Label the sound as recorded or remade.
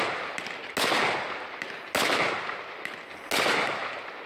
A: recorded